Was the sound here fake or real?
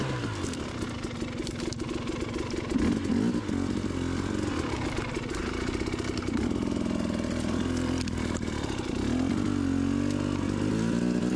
real